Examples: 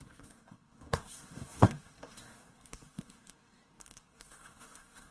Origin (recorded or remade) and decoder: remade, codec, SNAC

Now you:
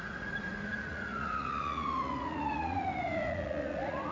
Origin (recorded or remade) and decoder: remade, vocoder, Vocos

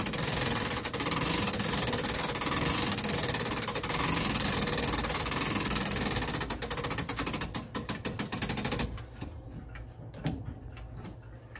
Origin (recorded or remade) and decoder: recorded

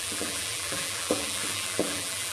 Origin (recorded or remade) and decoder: remade, vocoder, BigVGAN v2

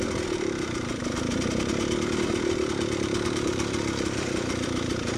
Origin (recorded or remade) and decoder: remade, vocoder, BigVGAN v2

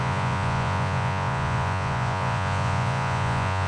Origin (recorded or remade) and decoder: remade, vocoder, Vocos